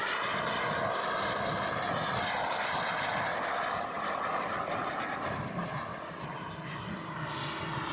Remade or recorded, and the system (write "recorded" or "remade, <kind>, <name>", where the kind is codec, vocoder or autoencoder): recorded